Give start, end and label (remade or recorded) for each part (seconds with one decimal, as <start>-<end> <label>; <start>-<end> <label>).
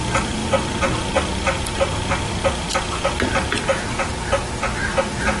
0.0-5.4 recorded